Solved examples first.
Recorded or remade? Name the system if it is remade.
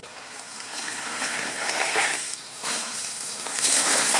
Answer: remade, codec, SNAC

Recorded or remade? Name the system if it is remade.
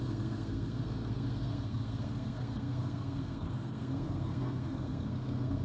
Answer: remade, codec, SNAC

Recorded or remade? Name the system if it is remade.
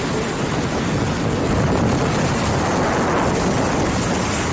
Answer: recorded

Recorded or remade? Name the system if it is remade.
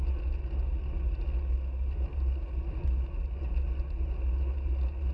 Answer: recorded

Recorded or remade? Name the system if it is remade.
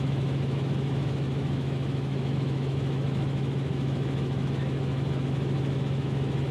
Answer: remade, autoencoder, DAC-VAE